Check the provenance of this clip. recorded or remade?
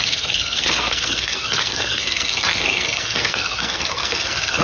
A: remade